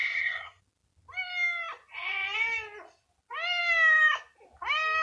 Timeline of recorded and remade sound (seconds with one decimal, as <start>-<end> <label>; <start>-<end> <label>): 0.0-0.6 remade; 0.6-5.0 recorded